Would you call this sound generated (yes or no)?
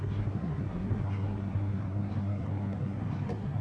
yes